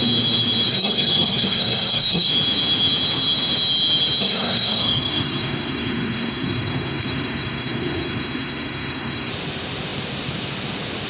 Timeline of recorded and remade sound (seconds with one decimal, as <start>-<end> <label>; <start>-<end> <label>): 0.0-0.7 recorded; 0.7-2.3 remade; 2.3-4.2 recorded; 4.2-9.3 remade; 9.3-11.1 recorded